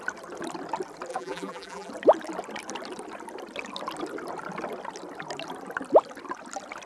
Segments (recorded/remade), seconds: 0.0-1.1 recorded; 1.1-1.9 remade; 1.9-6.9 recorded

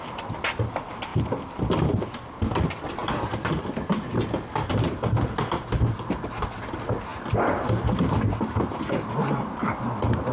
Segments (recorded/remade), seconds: 0.0-10.3 recorded

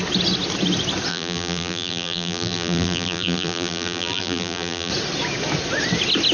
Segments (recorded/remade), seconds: 0.0-1.1 recorded; 1.1-4.9 remade; 4.9-6.3 recorded

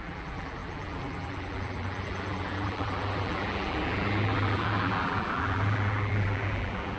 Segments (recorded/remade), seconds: 0.0-7.0 remade

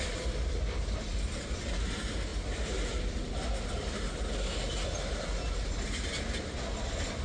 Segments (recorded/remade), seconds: 0.0-1.1 recorded; 1.1-1.7 remade; 1.7-7.2 recorded

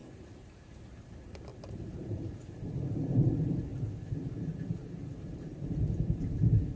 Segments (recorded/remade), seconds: 0.0-1.0 recorded; 1.0-3.7 remade; 3.7-4.9 recorded; 4.9-6.8 remade